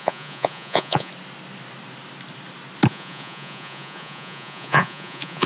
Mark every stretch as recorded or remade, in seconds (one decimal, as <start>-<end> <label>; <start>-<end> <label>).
0.0-1.1 remade; 1.1-2.9 recorded; 2.9-5.5 remade